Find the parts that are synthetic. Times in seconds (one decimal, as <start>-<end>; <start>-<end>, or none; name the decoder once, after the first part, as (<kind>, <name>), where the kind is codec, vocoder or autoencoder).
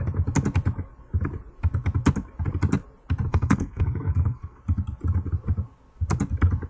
3.3-4.6 (codec, SNAC)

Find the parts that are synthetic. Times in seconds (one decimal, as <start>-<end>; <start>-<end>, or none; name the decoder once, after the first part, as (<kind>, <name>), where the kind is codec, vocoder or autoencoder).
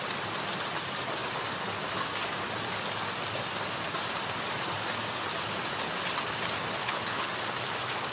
6.8-7.3 (codec, HILCodec)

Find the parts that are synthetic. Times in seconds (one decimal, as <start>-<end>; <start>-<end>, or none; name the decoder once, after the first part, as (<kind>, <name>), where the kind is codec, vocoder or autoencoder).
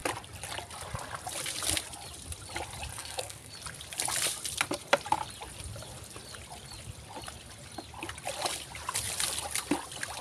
2.9-3.5 (codec, SNAC)